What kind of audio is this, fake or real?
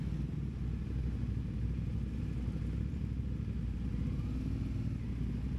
real